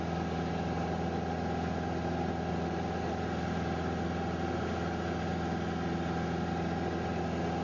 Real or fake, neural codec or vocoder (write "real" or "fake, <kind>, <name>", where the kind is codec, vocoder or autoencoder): real